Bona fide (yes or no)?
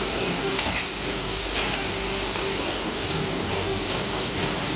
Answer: no